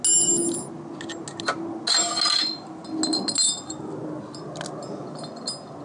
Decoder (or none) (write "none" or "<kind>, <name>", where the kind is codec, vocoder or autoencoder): none